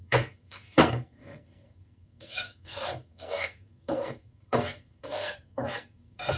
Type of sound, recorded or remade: remade